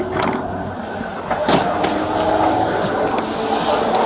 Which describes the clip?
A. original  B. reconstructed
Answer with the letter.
A